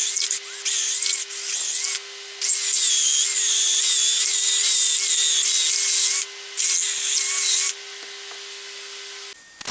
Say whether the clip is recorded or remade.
recorded